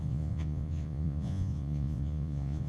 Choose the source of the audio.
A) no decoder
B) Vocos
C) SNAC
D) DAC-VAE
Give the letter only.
B